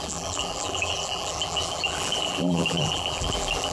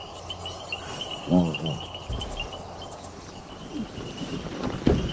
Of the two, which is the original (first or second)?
second